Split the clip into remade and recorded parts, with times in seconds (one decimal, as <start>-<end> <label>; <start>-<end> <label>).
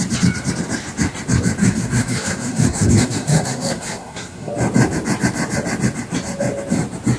0.0-1.6 recorded; 1.6-4.5 remade; 4.5-7.2 recorded